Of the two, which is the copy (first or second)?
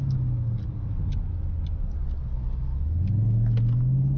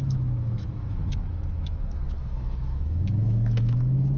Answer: second